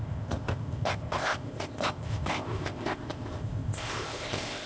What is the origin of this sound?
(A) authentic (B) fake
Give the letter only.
B